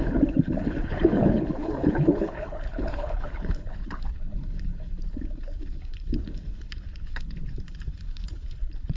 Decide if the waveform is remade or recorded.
remade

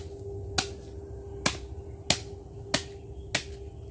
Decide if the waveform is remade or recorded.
recorded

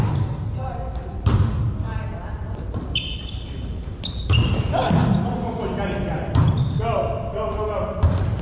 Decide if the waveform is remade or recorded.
recorded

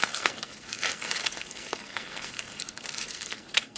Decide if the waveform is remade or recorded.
remade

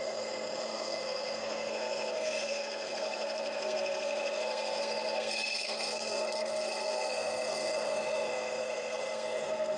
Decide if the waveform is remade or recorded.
remade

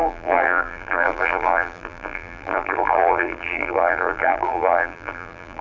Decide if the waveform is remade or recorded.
remade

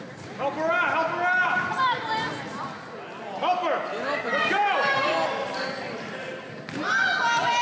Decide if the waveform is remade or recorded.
recorded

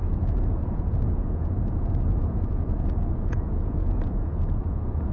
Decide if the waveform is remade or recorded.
remade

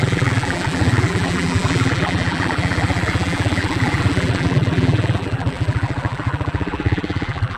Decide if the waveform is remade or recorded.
remade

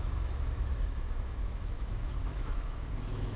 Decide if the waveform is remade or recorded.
remade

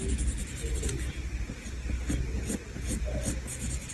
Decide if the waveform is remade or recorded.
recorded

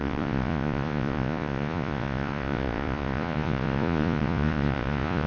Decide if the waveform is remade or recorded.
remade